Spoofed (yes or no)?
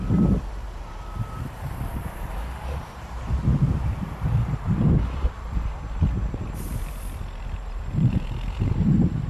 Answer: yes